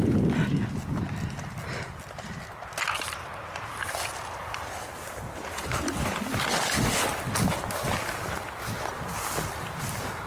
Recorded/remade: recorded